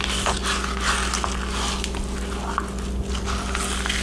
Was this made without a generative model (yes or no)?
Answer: yes